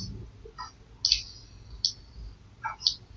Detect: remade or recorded recorded